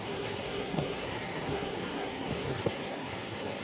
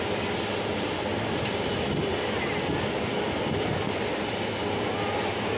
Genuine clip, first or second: second